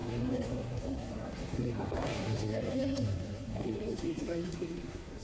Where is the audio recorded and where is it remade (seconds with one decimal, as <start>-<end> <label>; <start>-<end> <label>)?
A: 0.0-5.2 remade